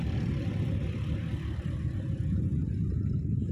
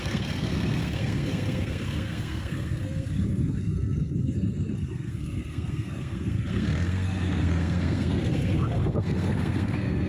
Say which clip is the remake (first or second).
second